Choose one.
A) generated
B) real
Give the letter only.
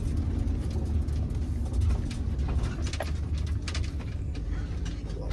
B